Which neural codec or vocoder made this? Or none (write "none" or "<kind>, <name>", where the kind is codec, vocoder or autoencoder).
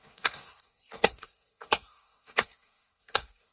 codec, SNAC